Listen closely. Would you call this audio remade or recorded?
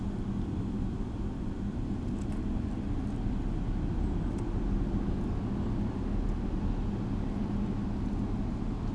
recorded